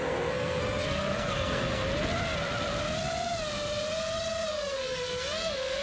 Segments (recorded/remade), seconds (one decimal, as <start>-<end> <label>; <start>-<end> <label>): 0.0-1.8 remade; 1.8-4.5 recorded; 4.5-5.8 remade